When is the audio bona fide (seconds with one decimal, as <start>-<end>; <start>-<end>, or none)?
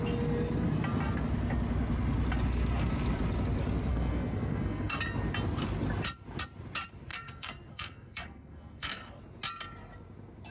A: 0.0-3.9; 5.0-7.1; 9.2-10.5